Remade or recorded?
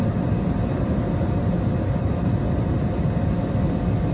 recorded